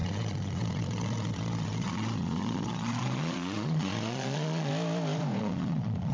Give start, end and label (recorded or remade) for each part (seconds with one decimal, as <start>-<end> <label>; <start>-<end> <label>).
0.0-4.7 remade; 4.7-5.4 recorded; 5.4-6.1 remade